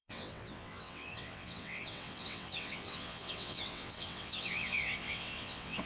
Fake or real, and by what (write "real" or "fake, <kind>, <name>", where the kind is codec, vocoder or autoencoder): fake, vocoder, WaveNeXt